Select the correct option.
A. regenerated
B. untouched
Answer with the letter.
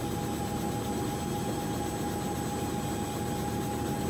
B